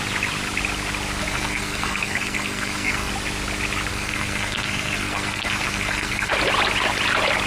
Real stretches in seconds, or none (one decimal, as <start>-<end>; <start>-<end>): 0.0-1.2; 3.1-3.9; 6.3-7.5